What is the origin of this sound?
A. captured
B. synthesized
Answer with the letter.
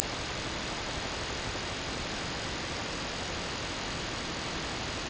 A